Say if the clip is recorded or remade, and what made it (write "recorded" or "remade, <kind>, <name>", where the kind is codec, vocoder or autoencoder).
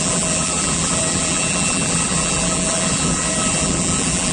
remade, vocoder, BigVGAN v2